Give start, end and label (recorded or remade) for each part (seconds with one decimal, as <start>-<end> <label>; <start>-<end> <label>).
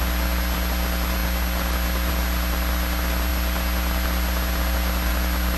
0.0-5.6 recorded